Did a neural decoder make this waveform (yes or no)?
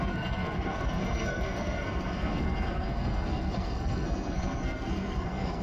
yes